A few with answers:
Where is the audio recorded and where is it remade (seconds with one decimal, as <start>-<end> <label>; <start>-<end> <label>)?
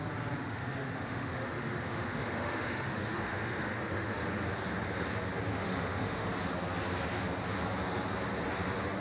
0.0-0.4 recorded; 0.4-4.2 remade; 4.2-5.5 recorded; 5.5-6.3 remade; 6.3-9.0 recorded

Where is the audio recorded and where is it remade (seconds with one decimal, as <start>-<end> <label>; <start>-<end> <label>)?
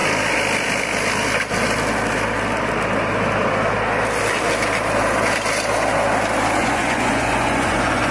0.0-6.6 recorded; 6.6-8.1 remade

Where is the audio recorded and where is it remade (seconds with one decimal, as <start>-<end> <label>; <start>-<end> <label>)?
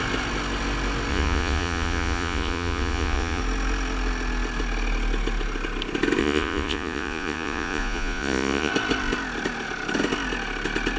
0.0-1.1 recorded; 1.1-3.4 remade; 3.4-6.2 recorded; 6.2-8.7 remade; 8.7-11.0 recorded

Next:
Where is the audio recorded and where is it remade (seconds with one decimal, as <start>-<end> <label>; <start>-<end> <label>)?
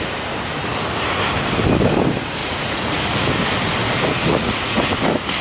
0.0-2.4 recorded; 2.4-3.0 remade; 3.0-4.2 recorded; 4.2-4.9 remade; 4.9-5.4 recorded